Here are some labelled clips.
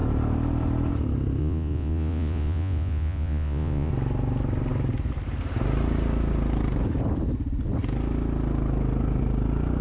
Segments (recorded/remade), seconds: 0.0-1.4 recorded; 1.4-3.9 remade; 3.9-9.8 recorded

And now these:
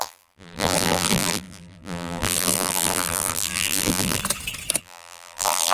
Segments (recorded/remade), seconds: 0.0-4.2 remade; 4.2-4.8 recorded; 4.8-5.7 remade